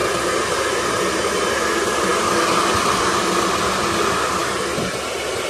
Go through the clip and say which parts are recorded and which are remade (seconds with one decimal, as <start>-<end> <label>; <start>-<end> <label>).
0.0-5.5 recorded